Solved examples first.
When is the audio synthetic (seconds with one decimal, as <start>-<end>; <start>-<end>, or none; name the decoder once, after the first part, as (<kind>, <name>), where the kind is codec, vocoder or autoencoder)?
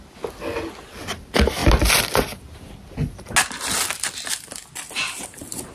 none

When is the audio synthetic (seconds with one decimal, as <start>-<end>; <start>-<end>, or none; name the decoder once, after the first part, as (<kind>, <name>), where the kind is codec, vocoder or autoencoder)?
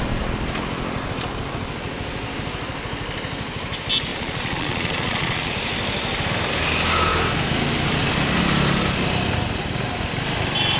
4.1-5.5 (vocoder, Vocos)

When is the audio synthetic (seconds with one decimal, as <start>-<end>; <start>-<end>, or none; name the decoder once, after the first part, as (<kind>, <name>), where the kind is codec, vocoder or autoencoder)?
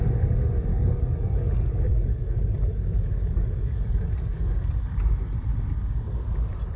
0.7-4.8 (codec, DAC)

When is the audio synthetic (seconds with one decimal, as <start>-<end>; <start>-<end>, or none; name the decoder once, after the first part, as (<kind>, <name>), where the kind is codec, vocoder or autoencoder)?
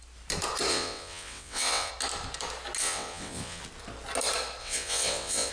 0.7-1.9 (vocoder, WaveNeXt); 2.8-3.6; 4.6-5.5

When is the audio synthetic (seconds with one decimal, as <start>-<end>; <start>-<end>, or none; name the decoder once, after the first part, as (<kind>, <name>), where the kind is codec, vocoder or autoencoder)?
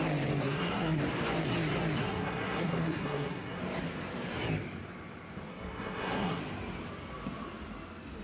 0.4-1.0 (codec, SNAC); 2.0-3.6; 5.5-6.4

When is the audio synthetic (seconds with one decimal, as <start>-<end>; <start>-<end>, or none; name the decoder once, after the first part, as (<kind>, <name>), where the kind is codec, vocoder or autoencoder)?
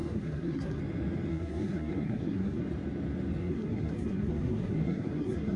0.0-0.8 (codec, SNAC); 1.3-2.6; 3.4-5.6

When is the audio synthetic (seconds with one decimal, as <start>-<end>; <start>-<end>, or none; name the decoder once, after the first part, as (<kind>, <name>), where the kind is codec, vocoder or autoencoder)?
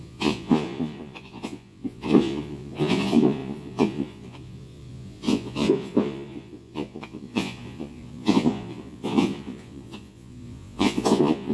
0.0-11.5 (vocoder, Vocos)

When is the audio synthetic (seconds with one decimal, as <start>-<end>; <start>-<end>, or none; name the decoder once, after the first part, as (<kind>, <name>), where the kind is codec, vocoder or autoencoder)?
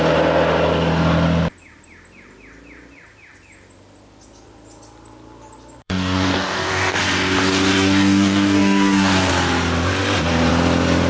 5.8-7.0 (codec, DAC); 7.4-9.3